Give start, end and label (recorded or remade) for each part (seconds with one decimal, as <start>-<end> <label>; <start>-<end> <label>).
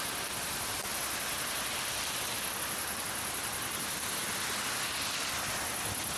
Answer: 0.0-0.9 recorded; 0.9-4.6 remade; 4.6-6.2 recorded